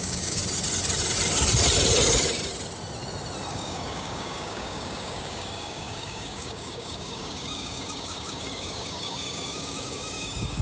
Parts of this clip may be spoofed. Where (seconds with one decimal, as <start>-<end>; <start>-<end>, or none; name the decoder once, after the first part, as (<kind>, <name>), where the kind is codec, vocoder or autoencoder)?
0.0-0.4 (codec, DAC); 3.5-10.6